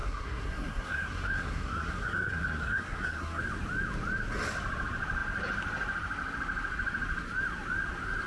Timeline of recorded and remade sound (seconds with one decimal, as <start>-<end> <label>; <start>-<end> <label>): 0.0-3.4 remade; 3.4-8.3 recorded